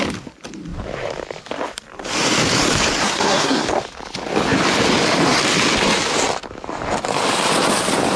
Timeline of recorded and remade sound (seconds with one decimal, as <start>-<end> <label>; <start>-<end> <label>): 0.0-3.0 recorded; 3.0-3.6 remade; 3.6-8.2 recorded